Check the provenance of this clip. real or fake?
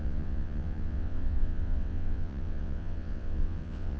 fake